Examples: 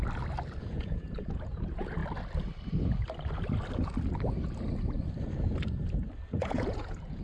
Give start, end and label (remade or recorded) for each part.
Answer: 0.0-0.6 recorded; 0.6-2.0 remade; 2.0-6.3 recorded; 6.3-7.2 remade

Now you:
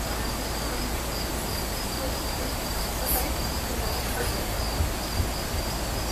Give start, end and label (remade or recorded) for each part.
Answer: 0.0-0.9 recorded; 0.9-4.6 remade; 4.6-6.1 recorded

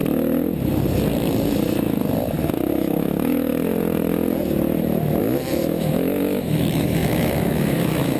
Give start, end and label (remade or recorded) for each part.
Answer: 0.0-2.7 recorded; 2.7-3.5 remade; 3.5-5.2 recorded; 5.2-8.2 remade

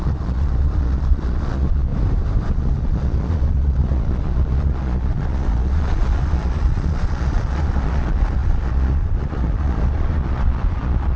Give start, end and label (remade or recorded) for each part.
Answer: 0.0-1.9 remade; 1.9-2.5 recorded; 2.5-11.2 remade